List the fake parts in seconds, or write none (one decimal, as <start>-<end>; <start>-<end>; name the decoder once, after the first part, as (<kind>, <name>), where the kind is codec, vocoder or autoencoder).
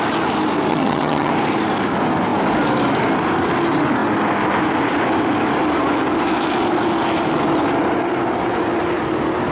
0.7-1.3 (vocoder, HiFi-GAN)